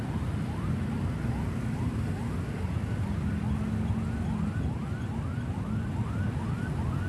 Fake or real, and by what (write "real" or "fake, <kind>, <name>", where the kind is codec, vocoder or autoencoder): real